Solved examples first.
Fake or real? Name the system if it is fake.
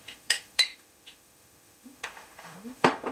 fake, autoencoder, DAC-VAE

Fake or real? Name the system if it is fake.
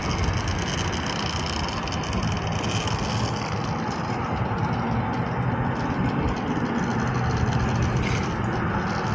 real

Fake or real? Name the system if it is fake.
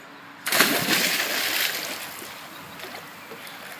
real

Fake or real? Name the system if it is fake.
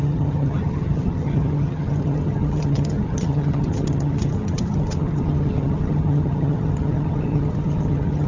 fake, vocoder, HiFi-GAN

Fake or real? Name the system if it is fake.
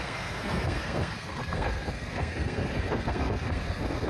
fake, codec, SNAC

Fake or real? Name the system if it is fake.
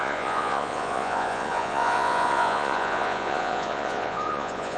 fake, vocoder, Vocos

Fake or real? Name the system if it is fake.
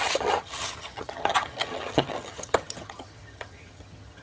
fake, vocoder, HiFi-GAN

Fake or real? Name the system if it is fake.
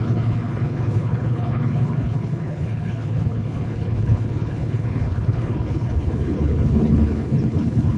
fake, codec, HILCodec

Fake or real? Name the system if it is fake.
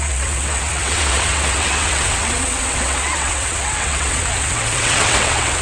fake, vocoder, WaveNeXt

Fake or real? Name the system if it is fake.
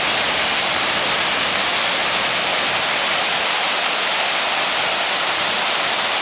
real